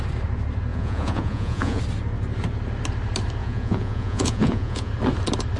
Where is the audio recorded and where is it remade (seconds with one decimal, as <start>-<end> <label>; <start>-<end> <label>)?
0.0-0.7 recorded; 0.7-1.8 remade; 1.8-3.4 recorded; 3.4-4.9 remade; 4.9-5.6 recorded